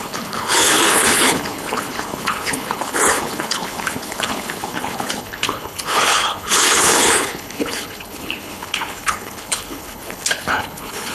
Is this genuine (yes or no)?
no